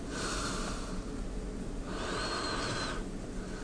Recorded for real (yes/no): yes